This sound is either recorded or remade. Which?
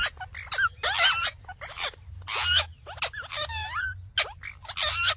recorded